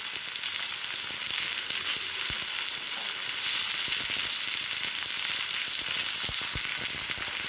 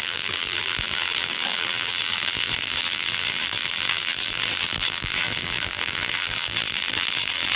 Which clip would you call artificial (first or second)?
second